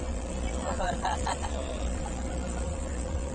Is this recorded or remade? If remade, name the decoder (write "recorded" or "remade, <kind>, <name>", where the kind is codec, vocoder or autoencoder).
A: remade, vocoder, Vocos